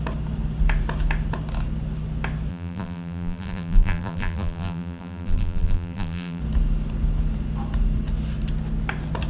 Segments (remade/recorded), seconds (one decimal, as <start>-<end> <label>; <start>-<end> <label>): 0.0-2.5 recorded; 2.5-6.4 remade; 6.4-9.3 recorded